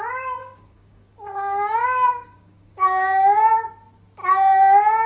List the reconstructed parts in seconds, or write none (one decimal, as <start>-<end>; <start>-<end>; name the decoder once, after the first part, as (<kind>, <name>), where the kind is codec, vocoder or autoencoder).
0.4-3.5 (codec, DAC)